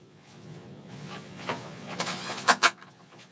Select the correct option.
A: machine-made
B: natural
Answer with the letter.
A